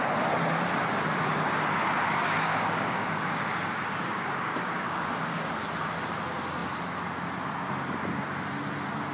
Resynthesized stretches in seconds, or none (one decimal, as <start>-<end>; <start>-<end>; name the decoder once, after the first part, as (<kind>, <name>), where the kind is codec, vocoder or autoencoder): 2.5-5.5 (codec, DAC)